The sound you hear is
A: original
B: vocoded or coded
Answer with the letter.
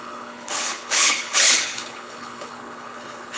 B